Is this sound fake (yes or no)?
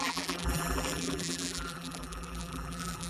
yes